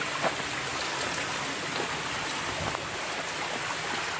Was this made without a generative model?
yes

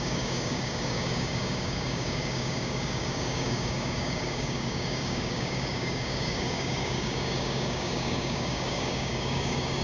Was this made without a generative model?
no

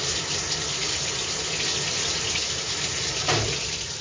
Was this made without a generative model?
yes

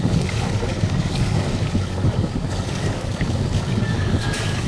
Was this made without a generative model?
no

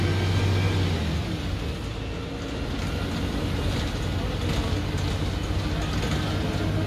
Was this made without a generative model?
yes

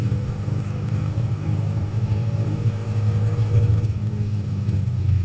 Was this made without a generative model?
no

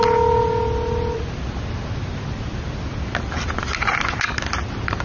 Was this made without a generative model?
yes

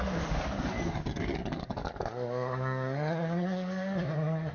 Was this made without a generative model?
no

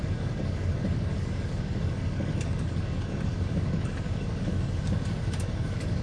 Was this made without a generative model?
no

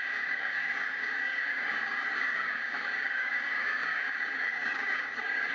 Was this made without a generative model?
no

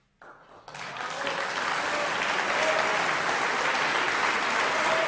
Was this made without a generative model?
yes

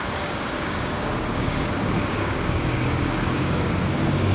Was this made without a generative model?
no